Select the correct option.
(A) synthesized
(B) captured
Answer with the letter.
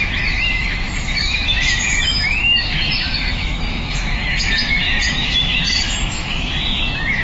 A